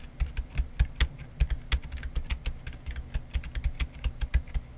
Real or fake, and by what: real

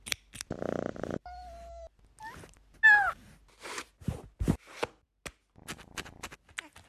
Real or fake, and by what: real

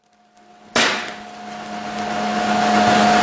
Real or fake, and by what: real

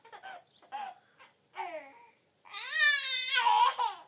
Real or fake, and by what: real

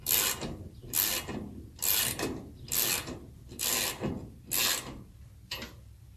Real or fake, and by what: real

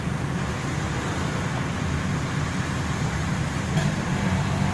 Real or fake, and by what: real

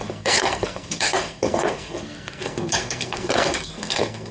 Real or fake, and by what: fake, codec, SNAC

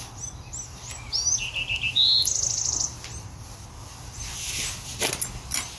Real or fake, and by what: real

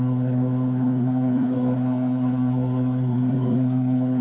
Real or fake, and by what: fake, codec, SNAC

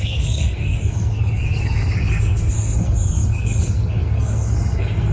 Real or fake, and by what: fake, codec, SNAC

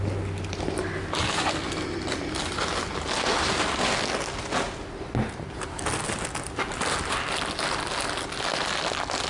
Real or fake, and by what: real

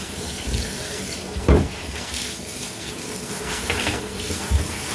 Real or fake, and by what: fake, codec, SNAC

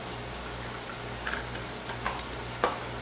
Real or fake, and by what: real